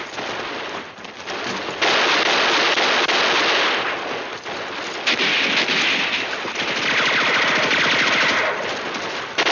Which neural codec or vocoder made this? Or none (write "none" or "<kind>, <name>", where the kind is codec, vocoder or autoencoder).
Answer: none